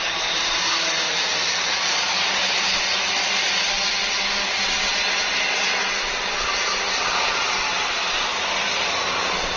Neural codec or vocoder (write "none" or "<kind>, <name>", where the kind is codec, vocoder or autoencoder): none